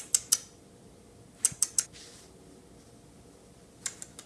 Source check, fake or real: real